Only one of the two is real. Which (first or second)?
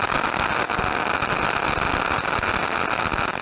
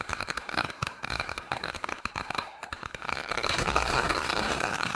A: first